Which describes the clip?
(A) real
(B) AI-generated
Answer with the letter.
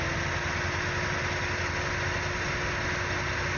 A